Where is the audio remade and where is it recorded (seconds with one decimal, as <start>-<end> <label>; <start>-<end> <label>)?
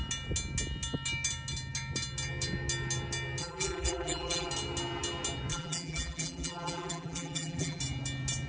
0.0-3.4 recorded; 3.4-4.5 remade; 4.5-5.5 recorded; 5.5-7.8 remade; 7.8-8.5 recorded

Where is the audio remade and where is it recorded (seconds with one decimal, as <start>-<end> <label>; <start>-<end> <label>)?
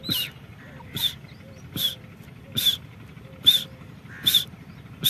0.0-5.1 recorded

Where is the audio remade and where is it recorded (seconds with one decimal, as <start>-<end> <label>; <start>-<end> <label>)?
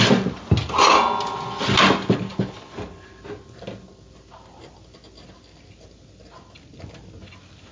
0.0-7.7 recorded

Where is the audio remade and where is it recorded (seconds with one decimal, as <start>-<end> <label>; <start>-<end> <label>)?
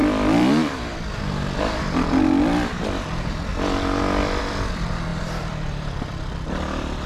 0.0-3.5 remade; 3.5-4.4 recorded; 4.4-7.1 remade